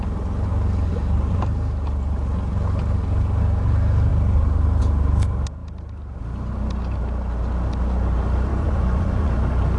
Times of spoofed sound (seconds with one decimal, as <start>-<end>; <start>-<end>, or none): 8.5-9.4